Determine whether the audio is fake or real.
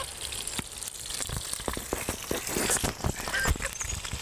real